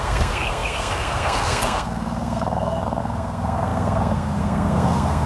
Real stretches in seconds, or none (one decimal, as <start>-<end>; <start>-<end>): none